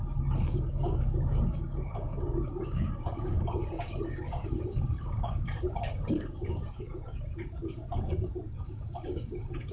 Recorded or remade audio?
remade